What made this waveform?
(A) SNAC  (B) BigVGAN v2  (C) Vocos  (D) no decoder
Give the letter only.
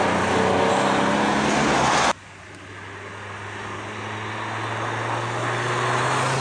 D